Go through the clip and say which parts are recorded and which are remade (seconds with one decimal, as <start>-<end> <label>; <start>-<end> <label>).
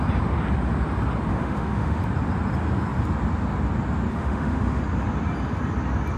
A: 0.0-1.3 recorded; 1.3-2.0 remade; 2.0-4.1 recorded; 4.1-4.8 remade; 4.8-6.2 recorded